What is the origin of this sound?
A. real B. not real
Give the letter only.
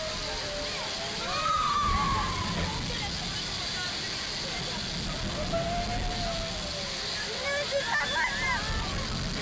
A